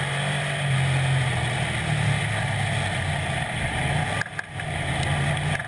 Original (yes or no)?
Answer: yes